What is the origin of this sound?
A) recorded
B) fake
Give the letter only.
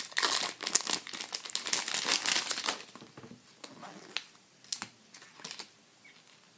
A